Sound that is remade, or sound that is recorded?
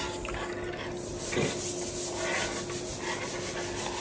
recorded